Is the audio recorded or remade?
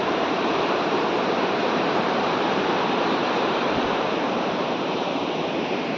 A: remade